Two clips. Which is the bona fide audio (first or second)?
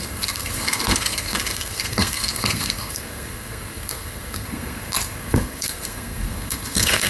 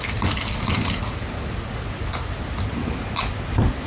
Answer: second